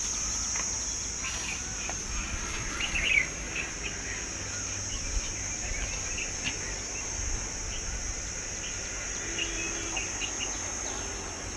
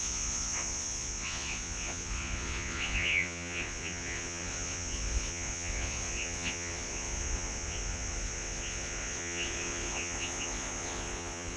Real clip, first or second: first